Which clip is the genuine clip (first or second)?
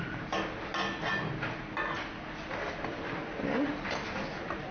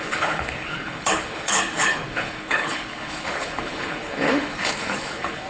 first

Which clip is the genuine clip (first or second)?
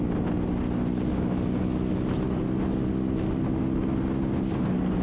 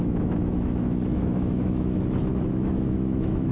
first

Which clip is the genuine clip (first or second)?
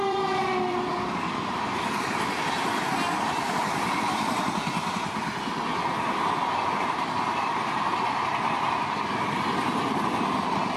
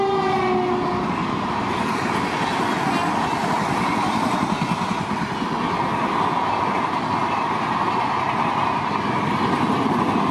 second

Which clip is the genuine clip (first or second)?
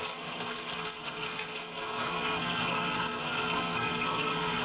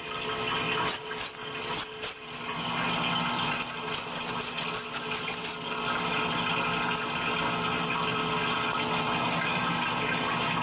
second